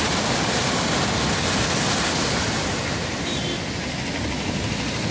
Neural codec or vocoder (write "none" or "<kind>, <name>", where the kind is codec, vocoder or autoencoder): none